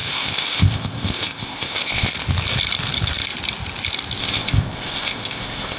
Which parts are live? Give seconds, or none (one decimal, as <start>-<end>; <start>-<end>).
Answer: 2.1-4.2